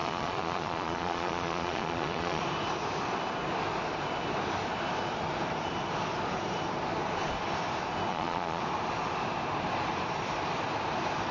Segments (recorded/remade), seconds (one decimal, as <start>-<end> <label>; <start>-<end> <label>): 0.0-2.4 remade; 2.4-8.1 recorded; 8.1-8.6 remade; 8.6-11.3 recorded